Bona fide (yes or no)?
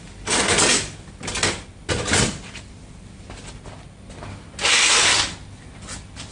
yes